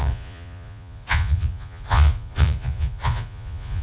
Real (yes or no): no